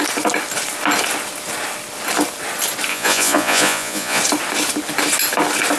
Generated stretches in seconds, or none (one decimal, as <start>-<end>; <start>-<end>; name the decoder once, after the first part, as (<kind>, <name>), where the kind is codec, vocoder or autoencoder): 2.9-4.2 (vocoder, Vocos)